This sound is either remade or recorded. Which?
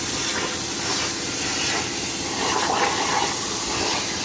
recorded